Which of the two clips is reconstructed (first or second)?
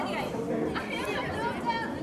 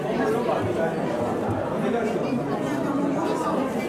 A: first